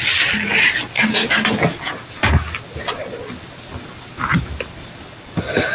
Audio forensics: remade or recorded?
recorded